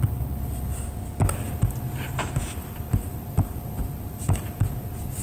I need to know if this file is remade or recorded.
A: recorded